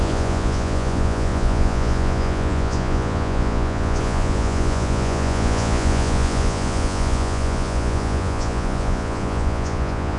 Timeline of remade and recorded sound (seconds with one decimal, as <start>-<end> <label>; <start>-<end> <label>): 0.0-10.2 remade